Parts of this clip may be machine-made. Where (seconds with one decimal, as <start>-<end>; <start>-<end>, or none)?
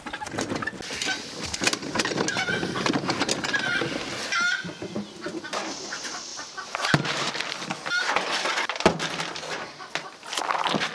1.8-3.3; 6.3-7.3